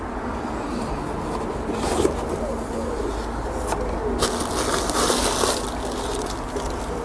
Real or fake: real